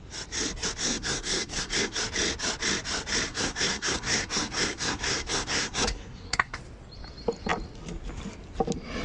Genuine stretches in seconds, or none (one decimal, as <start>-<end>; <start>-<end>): 0.0-0.8; 2.0-3.3; 6.6-9.0